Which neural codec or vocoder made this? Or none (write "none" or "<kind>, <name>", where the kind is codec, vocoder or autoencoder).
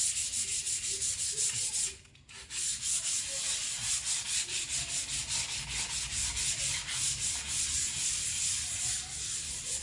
none